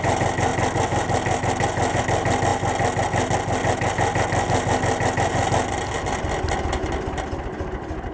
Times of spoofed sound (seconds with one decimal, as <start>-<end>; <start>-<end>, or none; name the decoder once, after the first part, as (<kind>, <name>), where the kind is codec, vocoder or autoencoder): none